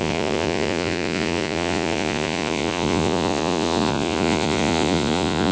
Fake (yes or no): yes